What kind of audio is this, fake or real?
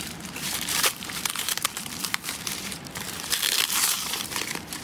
fake